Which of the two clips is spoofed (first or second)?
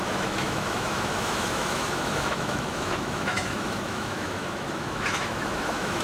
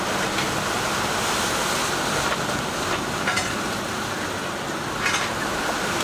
first